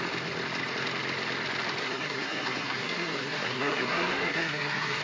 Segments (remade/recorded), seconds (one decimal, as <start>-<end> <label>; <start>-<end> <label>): 0.0-1.8 recorded; 1.8-5.0 remade